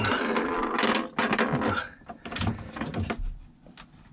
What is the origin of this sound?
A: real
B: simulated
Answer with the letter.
A